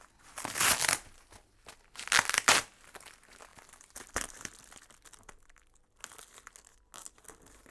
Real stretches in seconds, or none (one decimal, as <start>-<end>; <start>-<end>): 0.0-7.7